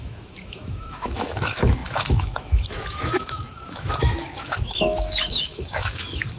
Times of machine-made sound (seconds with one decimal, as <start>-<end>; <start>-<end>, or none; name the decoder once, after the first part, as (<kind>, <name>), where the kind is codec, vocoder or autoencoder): 0.0-6.4 (autoencoder, DAC-VAE)